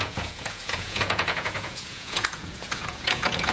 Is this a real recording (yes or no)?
no